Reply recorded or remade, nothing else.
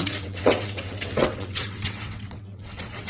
remade